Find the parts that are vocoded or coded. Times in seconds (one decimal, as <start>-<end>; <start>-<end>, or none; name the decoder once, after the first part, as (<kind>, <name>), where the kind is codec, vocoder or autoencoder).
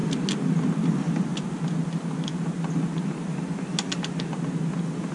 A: none